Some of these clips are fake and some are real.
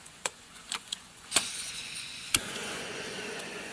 fake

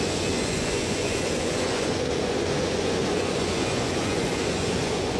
fake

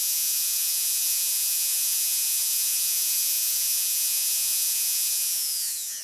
fake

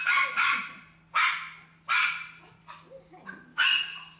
real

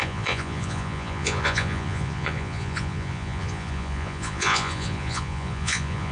fake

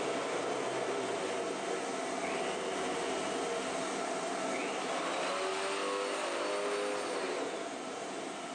real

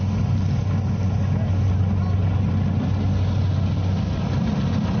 real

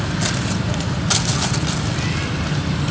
real